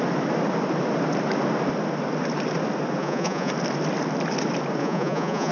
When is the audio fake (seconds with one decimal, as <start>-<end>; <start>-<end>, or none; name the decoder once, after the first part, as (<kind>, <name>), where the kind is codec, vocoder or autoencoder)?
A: 3.0-3.5 (vocoder, Vocos); 4.8-5.5